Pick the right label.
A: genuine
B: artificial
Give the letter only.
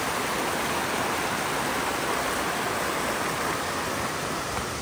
A